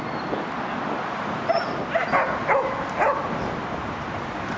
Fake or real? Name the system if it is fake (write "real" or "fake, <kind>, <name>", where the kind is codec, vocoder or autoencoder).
real